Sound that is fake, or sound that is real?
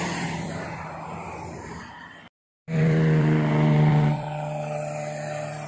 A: fake